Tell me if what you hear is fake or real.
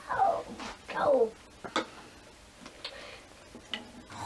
real